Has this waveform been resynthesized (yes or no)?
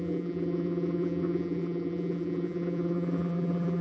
yes